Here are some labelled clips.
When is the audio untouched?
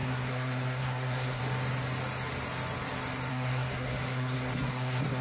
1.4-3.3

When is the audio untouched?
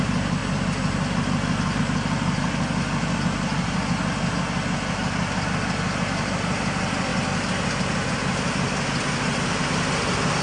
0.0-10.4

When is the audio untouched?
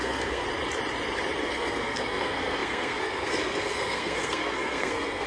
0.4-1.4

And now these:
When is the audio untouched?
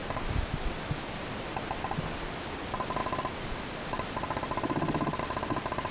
0.0-3.0; 5.2-5.9